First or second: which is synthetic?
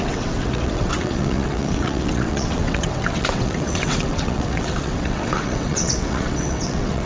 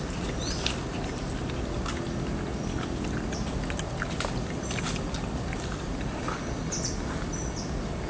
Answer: first